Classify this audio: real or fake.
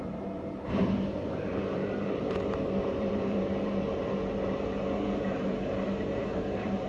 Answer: fake